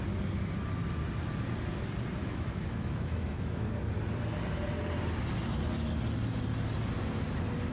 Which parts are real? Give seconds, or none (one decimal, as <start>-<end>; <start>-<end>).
0.0-2.2; 3.7-7.7